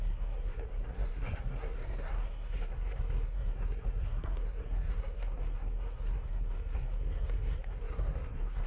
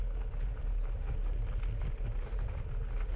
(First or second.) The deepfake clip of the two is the first